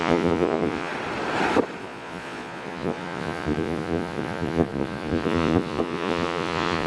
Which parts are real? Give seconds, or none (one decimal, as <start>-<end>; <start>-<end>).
0.9-1.8